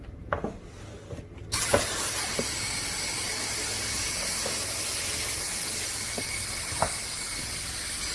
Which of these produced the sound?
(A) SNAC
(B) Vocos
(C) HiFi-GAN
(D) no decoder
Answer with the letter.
D